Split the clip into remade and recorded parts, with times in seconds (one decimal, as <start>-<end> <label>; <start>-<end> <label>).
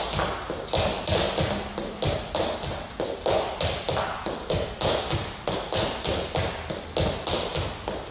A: 0.0-8.1 recorded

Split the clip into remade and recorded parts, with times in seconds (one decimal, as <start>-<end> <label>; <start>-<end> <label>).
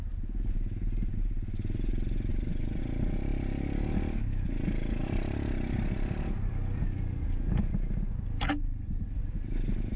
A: 0.0-2.3 recorded; 2.3-2.8 remade; 2.8-10.0 recorded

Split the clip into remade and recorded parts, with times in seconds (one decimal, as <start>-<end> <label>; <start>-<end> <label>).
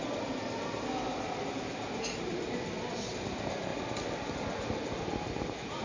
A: 0.0-5.8 recorded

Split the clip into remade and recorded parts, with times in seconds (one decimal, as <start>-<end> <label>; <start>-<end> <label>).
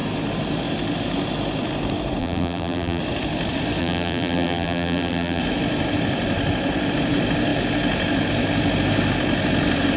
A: 0.0-2.2 recorded; 2.2-3.0 remade; 3.0-3.8 recorded; 3.8-5.4 remade; 5.4-10.0 recorded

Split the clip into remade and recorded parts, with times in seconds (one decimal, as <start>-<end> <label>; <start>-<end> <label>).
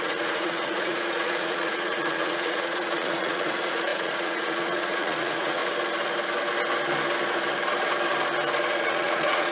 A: 0.0-5.6 remade; 5.6-8.6 recorded; 8.6-9.5 remade